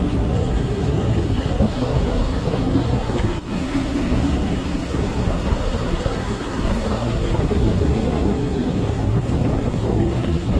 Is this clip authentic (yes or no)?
no